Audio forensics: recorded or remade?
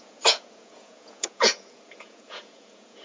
remade